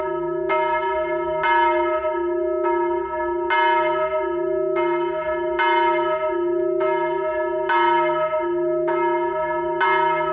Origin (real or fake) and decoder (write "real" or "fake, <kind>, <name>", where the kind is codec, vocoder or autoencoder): real